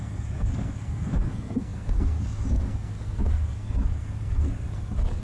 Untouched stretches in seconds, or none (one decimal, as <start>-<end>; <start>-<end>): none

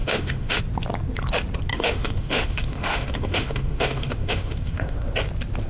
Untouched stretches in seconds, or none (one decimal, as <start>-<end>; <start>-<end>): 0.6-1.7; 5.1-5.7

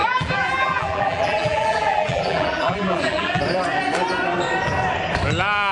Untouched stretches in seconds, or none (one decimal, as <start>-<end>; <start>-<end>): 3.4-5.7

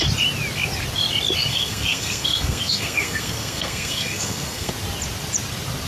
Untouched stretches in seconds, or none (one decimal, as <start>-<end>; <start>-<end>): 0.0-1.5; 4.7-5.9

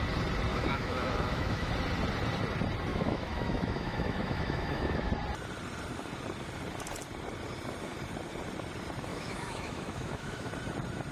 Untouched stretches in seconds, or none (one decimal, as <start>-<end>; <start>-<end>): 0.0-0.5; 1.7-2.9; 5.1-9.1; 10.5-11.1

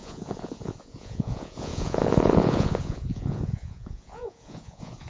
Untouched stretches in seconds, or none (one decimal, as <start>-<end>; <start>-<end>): none